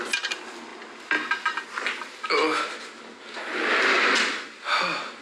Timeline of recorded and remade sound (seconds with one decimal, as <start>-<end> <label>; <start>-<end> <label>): 0.0-5.2 recorded